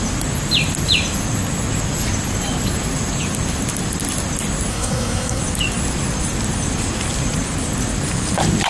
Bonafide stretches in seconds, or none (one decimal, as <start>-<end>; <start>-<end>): 0.0-4.7; 5.4-8.7